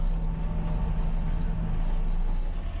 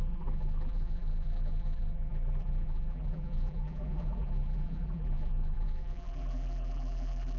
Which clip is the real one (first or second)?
first